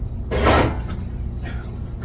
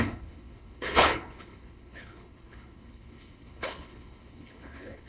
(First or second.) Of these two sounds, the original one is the first